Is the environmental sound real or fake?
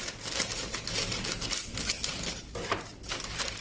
real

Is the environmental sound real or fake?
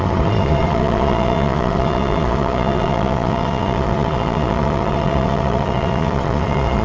fake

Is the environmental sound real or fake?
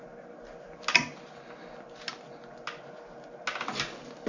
real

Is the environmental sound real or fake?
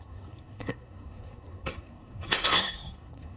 fake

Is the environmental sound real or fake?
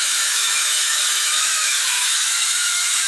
fake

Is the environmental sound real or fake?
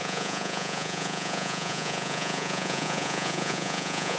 fake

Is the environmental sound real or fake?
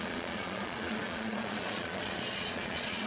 fake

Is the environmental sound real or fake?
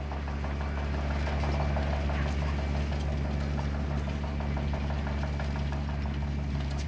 real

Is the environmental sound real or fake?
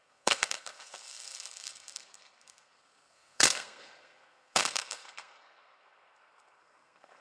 fake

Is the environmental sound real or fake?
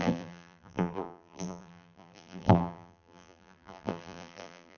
fake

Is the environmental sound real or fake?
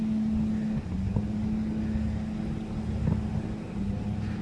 real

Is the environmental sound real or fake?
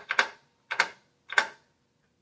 real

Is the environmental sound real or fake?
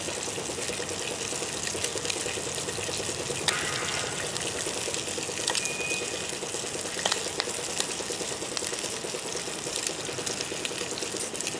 real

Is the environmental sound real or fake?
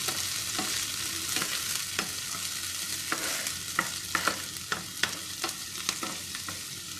real